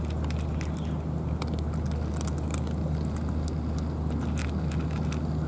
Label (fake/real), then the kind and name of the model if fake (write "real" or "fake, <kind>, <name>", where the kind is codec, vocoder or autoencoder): real